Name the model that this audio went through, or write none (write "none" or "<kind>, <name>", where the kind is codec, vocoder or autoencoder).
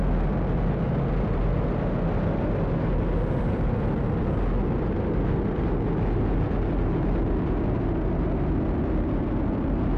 none